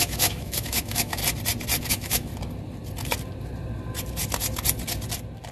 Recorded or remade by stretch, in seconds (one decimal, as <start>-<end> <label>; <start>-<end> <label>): 0.0-1.2 remade; 1.2-1.9 recorded; 1.9-2.3 remade; 2.3-5.5 recorded